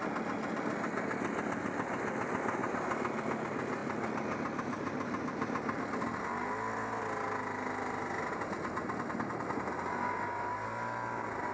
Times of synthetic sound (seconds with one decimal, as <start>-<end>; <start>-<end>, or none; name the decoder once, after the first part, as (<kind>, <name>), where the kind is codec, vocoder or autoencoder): none